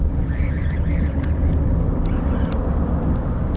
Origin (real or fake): real